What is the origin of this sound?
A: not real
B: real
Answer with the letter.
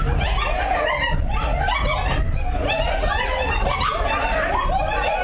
B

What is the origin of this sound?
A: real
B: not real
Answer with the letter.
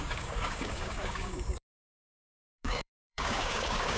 B